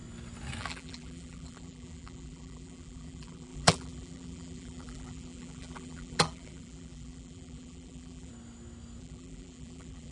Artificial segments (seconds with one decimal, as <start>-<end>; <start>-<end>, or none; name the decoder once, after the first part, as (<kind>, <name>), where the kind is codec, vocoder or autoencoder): 0.6-8.3 (vocoder, BigVGAN v2); 9.0-10.1